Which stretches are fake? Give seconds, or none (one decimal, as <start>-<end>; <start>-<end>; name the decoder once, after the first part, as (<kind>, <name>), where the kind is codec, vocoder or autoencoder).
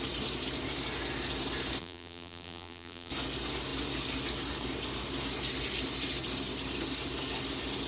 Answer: 1.8-3.1 (vocoder, BigVGAN v2)